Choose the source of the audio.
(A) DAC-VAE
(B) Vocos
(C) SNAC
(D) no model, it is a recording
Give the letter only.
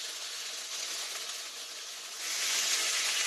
B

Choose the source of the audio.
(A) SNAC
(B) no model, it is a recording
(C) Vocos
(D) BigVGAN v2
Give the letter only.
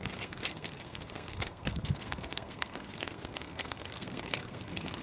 A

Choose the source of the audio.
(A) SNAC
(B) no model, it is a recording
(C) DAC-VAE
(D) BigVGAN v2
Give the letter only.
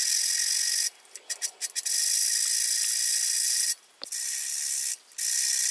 B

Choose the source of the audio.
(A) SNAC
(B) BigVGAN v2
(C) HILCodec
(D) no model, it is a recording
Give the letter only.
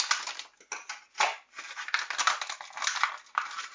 D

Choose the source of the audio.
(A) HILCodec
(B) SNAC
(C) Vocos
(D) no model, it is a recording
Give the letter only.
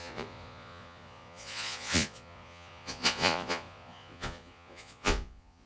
C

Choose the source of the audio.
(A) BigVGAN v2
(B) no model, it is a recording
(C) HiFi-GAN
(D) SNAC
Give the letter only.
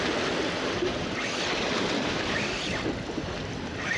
B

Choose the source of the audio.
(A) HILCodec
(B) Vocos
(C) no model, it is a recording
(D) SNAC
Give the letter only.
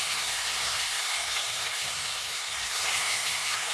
D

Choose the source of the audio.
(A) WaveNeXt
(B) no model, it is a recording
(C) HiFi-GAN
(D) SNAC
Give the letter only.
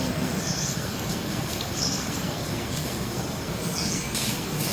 D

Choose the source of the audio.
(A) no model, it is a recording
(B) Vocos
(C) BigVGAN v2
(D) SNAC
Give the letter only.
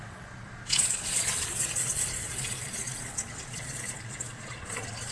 B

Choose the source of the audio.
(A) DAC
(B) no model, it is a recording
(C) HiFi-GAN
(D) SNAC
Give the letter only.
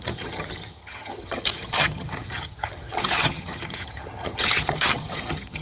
C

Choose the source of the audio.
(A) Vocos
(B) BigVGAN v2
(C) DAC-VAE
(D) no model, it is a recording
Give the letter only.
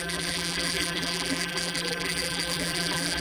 B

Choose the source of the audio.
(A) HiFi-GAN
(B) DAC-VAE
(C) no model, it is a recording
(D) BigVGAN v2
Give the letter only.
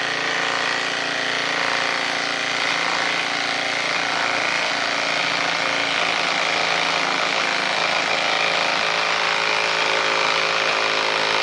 C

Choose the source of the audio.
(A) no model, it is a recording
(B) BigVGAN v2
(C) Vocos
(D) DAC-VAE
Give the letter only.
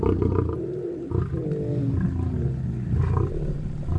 A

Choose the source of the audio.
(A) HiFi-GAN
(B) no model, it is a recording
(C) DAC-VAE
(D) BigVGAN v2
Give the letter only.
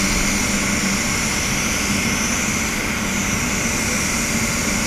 B